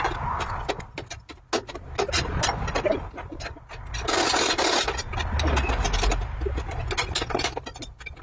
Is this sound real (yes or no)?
yes